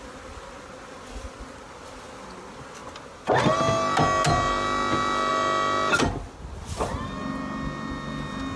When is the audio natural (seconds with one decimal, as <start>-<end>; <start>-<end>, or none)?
0.0-8.6